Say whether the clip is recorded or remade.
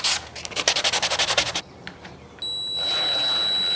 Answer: recorded